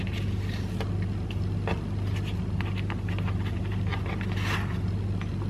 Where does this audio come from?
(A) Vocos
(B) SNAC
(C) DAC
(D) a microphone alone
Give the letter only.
D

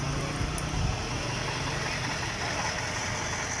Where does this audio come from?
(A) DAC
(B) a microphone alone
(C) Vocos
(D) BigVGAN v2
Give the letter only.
B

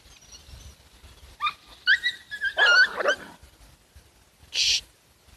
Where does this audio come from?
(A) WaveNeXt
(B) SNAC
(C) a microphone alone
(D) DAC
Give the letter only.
C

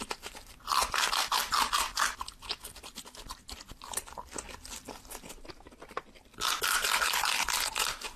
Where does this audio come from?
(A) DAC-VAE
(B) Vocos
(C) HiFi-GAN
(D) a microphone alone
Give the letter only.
D